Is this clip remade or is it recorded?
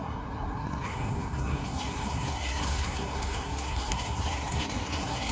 remade